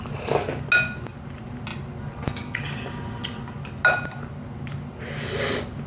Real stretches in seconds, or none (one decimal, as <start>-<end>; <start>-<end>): 0.0-5.9